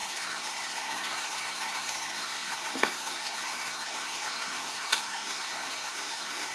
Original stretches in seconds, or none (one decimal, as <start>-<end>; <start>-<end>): none